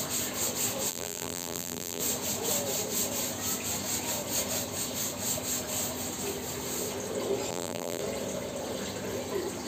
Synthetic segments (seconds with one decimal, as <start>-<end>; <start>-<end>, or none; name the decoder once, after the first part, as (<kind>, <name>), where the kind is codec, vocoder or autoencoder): 0.9-2.0 (vocoder, BigVGAN v2); 7.5-8.0